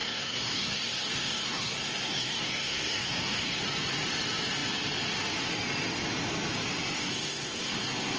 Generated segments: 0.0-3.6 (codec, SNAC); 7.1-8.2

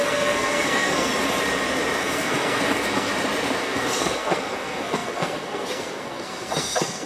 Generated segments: 0.0-1.1 (codec, SNAC); 2.0-3.1; 3.6-7.1

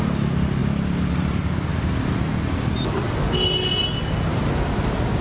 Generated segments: none

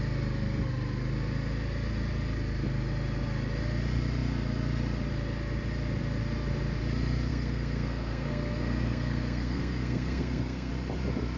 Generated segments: 7.3-10.7 (codec, SNAC)

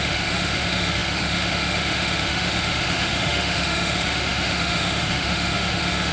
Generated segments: 0.0-6.1 (autoencoder, DAC-VAE)

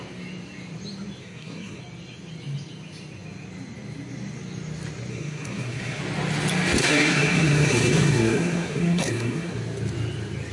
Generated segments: 1.2-1.8 (codec, SNAC); 5.1-6.0; 6.8-9.6

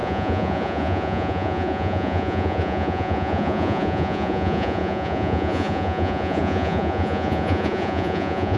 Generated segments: 0.0-8.6 (vocoder, Vocos)